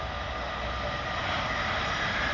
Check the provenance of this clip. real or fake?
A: real